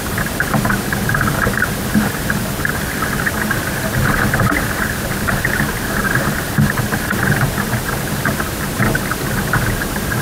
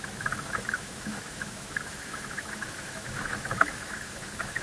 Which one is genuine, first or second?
first